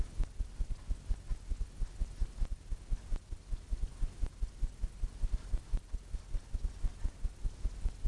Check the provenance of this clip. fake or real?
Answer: real